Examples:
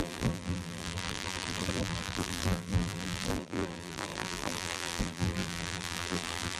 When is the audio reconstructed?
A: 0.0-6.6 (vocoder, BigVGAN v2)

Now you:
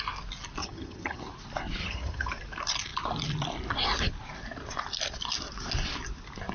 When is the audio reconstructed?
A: 0.6-1.2 (vocoder, HiFi-GAN); 1.8-2.3

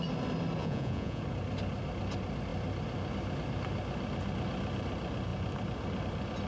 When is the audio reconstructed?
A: 0.6-1.2 (vocoder, Vocos)

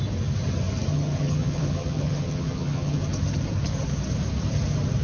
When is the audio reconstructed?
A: 0.9-3.0 (vocoder, HiFi-GAN)

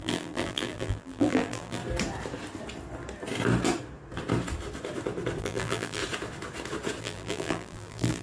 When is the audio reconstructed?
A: 0.0-1.8 (vocoder, BigVGAN v2); 5.4-6.0; 7.0-8.2

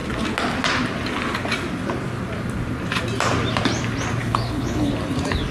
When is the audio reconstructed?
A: 4.2-4.9 (codec, HILCodec)